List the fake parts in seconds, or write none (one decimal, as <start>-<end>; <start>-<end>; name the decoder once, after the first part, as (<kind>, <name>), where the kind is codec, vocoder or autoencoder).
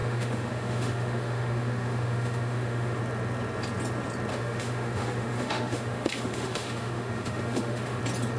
0.0-3.0 (autoencoder, DAC-VAE); 4.3-8.0